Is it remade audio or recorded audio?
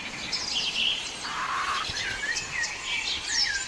recorded